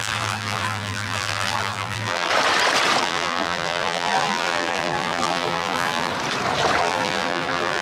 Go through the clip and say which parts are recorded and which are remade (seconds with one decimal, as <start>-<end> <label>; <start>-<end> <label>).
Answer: 0.0-2.3 remade; 2.3-3.0 recorded; 3.0-6.1 remade; 6.1-6.8 recorded; 6.8-7.8 remade